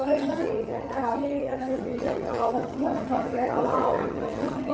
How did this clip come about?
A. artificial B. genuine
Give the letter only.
A